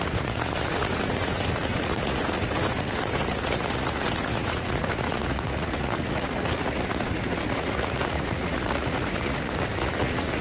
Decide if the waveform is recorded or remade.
remade